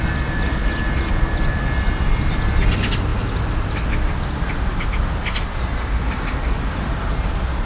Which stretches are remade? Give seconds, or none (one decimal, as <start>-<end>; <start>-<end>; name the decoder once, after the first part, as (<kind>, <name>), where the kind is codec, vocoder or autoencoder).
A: none

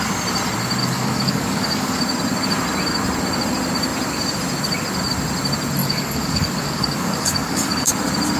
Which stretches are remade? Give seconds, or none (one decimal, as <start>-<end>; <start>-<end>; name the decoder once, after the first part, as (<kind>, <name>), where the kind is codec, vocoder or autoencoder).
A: 0.8-2.0 (codec, DAC); 5.8-7.9

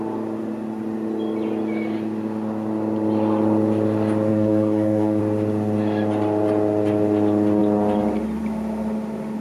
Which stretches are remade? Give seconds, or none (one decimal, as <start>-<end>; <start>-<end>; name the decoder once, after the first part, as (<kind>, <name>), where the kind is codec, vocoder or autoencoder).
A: 4.3-5.2 (codec, DAC)

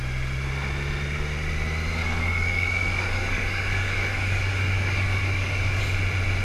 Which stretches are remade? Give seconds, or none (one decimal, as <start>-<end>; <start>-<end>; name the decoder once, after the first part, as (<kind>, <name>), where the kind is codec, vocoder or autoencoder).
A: 2.0-5.8 (codec, DAC)

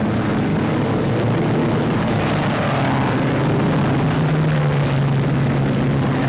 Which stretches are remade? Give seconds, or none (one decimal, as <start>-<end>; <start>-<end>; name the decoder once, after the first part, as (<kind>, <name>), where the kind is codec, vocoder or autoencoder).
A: 0.5-1.0 (codec, DAC); 1.6-2.2